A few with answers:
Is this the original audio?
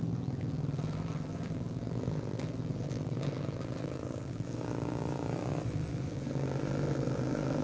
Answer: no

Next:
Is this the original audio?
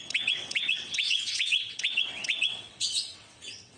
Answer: no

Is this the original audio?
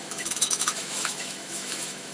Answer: no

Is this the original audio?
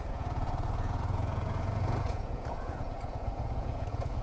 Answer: no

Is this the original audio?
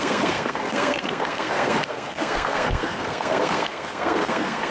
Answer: no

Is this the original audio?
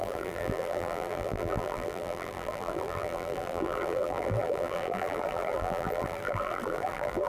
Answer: no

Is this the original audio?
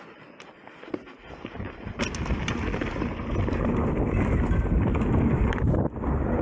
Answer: yes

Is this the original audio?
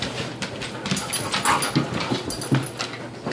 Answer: yes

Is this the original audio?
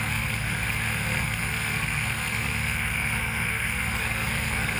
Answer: no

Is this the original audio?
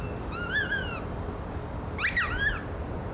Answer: yes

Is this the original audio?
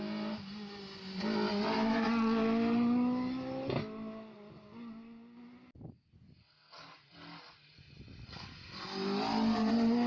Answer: yes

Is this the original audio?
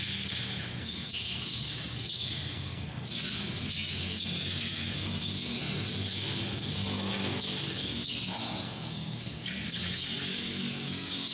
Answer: no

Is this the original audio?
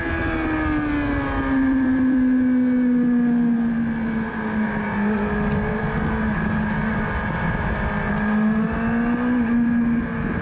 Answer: yes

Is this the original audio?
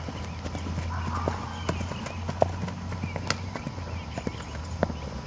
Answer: yes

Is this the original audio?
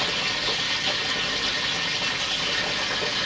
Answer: yes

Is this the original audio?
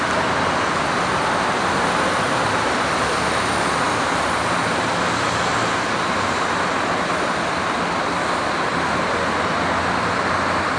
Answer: yes